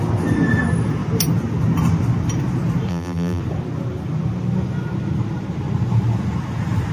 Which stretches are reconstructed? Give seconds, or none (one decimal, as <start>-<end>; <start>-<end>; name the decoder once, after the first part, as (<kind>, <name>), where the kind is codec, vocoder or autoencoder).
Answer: 2.9-3.4 (vocoder, BigVGAN v2)